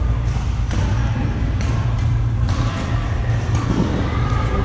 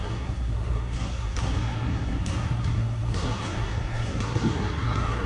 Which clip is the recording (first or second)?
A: first